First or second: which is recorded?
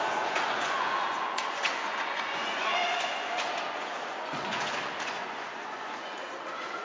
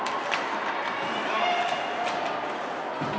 second